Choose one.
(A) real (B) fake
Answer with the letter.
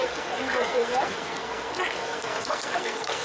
B